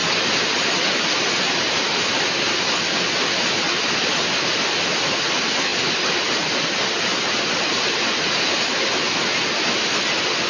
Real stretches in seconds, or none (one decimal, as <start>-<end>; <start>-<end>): 0.0-10.5